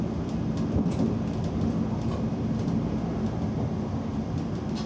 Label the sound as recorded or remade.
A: recorded